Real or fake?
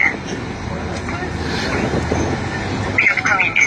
real